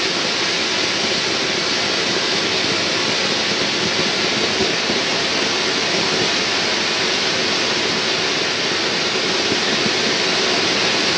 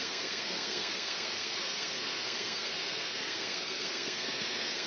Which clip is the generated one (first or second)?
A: second